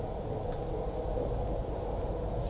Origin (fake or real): real